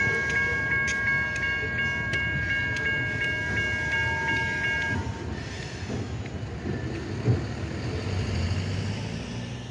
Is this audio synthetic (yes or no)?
no